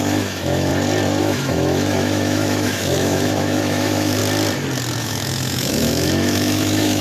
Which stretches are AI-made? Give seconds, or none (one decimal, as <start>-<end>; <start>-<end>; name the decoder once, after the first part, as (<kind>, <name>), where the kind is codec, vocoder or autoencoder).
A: 0.0-0.7 (autoencoder, DAC-VAE); 1.2-4.2; 5.0-7.0